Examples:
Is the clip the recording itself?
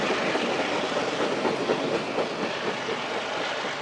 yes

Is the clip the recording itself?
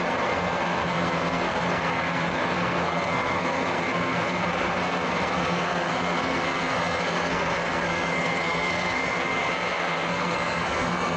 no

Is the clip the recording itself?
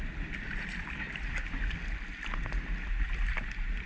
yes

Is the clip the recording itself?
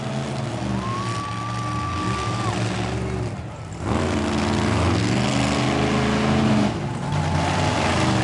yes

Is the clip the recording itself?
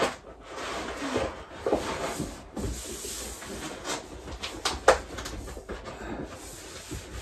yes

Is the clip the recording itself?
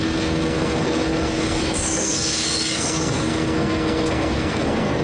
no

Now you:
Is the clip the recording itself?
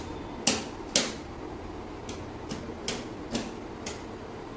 yes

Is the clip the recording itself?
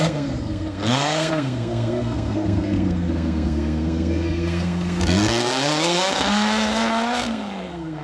no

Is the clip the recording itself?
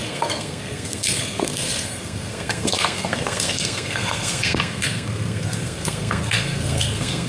no